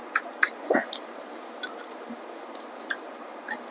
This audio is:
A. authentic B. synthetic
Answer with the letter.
B